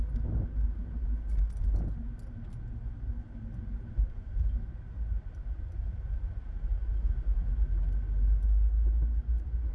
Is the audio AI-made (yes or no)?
no